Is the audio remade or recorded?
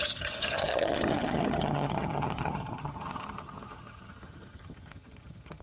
remade